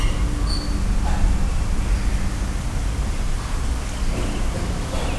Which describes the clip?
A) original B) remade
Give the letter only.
A